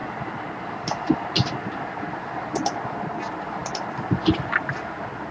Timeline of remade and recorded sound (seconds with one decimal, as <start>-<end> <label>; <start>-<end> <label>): 0.0-5.3 recorded